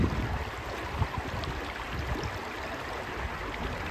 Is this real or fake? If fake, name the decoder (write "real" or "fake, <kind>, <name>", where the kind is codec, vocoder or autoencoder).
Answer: real